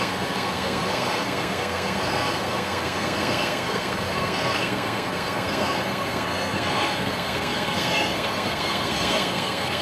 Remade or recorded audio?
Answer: remade